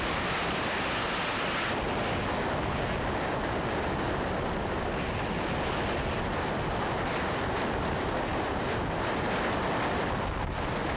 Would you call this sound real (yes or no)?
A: yes